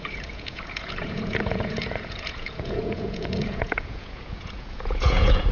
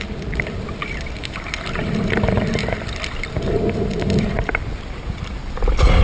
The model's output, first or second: first